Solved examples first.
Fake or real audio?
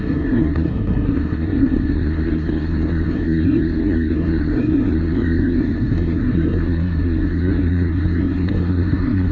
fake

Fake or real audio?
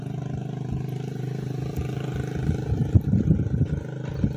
real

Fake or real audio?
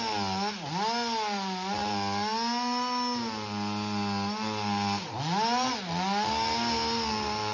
real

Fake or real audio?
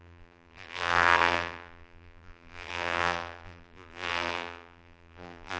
fake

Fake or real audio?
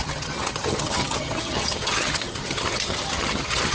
fake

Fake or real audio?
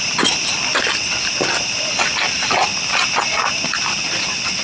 real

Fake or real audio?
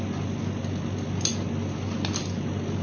real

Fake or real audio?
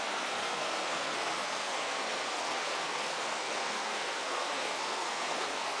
fake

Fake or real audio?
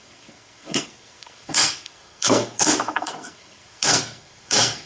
fake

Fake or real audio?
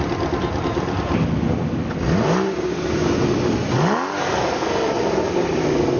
real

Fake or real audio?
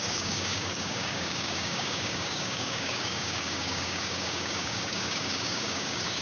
fake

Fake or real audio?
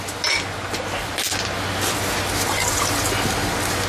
real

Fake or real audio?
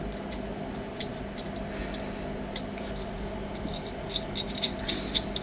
real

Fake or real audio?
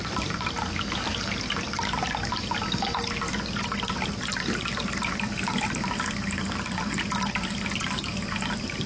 real